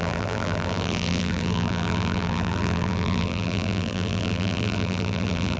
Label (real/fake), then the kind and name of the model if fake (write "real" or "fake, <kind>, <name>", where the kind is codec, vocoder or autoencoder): fake, vocoder, BigVGAN v2